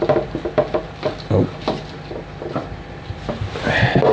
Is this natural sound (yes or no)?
yes